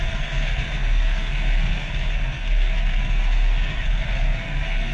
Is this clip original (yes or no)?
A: no